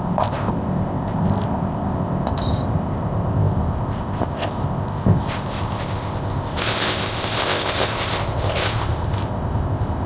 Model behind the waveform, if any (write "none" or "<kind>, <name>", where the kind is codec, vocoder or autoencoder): codec, ZipCodec